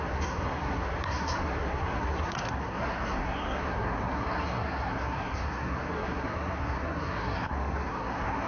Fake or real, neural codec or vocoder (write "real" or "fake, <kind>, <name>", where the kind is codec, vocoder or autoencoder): fake, codec, SNAC